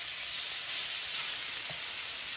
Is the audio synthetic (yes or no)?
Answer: no